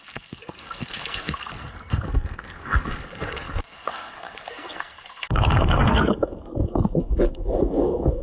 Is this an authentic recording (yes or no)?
no